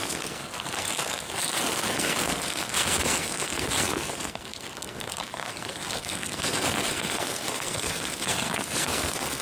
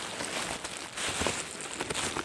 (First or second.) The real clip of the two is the second